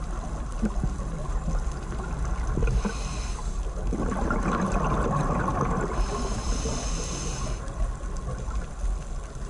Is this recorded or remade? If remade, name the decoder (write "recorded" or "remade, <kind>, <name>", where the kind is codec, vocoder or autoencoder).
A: recorded